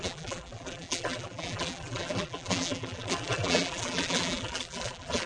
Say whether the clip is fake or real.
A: fake